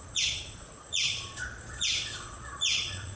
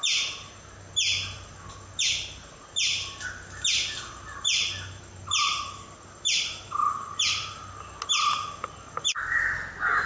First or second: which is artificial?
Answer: first